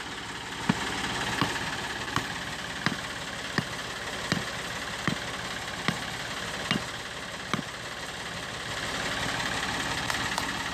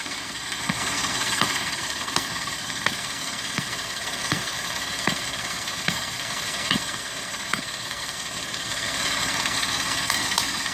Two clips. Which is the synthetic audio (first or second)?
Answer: second